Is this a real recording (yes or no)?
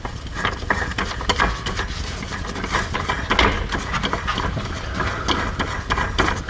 yes